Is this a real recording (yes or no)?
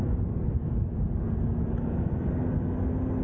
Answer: yes